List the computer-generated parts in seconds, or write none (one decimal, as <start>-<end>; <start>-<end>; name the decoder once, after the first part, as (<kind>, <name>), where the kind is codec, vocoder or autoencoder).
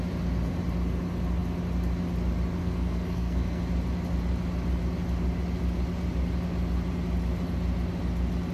2.6-3.6 (codec, SNAC)